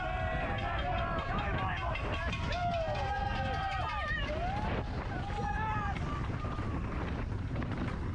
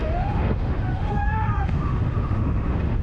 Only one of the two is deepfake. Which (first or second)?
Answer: second